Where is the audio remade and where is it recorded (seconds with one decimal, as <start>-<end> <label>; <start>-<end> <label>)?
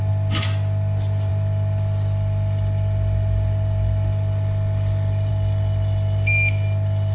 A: 0.0-7.1 recorded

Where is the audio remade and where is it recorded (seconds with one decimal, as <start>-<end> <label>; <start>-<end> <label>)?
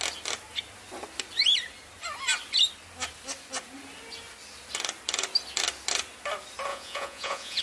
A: 0.0-6.7 recorded; 6.7-7.6 remade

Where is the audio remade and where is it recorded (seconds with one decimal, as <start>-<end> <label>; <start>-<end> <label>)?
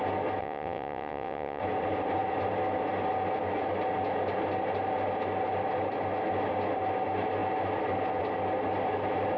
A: 0.0-0.4 recorded; 0.4-1.6 remade; 1.6-9.4 recorded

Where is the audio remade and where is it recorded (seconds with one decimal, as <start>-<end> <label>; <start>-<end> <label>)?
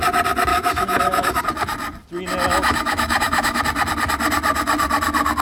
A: 0.0-0.5 recorded; 0.5-1.4 remade; 1.4-2.5 recorded; 2.5-3.6 remade; 3.6-5.4 recorded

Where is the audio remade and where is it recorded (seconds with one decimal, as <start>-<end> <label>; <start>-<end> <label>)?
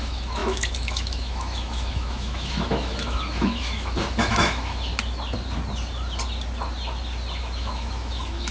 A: 0.0-4.9 remade; 4.9-7.4 recorded; 7.4-8.5 remade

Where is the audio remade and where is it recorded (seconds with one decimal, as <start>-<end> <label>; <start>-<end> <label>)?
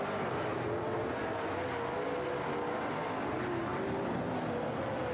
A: 0.0-5.1 recorded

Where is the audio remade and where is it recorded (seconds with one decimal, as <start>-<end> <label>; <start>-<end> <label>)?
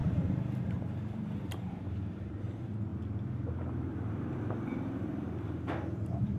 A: 0.0-2.9 remade; 2.9-3.5 recorded; 3.5-6.4 remade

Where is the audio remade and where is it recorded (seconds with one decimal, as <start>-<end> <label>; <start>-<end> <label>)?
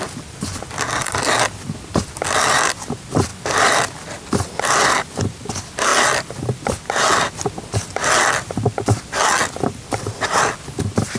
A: 0.0-11.2 recorded